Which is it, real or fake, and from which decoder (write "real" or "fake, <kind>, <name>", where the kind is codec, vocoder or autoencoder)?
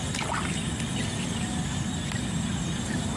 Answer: real